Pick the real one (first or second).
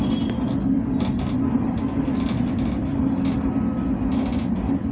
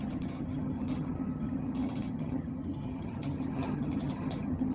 first